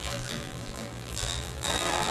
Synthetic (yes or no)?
yes